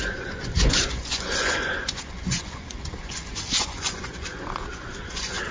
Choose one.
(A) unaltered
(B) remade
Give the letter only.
B